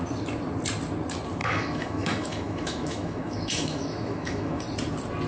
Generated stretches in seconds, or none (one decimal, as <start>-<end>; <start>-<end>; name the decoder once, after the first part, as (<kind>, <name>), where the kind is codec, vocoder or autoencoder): 1.4-4.6 (autoencoder, DAC-VAE)